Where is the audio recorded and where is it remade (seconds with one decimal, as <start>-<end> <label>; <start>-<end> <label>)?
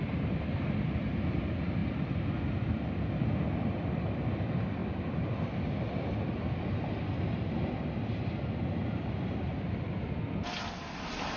0.0-11.4 recorded